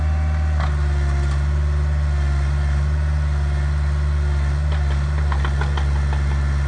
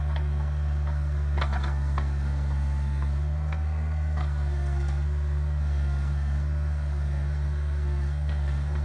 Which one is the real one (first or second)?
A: first